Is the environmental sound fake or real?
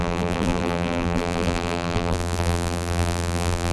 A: fake